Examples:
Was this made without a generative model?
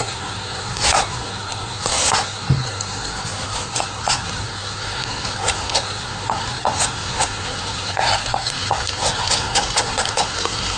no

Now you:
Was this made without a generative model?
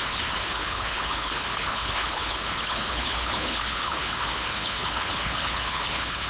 no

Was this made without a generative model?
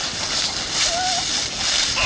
yes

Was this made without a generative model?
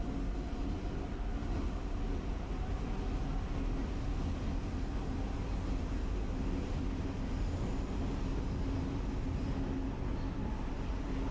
yes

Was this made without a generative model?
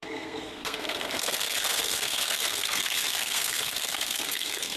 no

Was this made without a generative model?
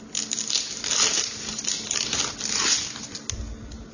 yes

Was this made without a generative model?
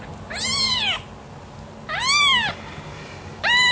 yes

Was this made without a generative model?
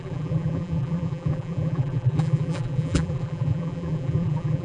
no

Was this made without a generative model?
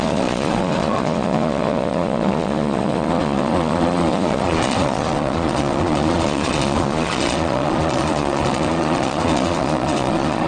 no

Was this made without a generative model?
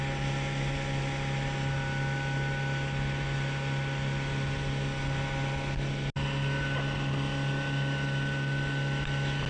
yes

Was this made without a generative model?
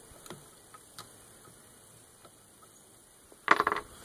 yes